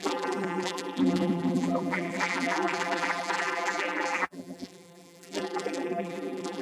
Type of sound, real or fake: fake